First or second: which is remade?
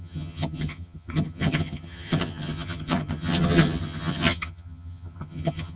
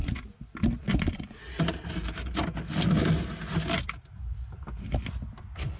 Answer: first